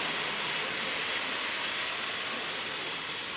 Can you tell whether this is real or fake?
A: real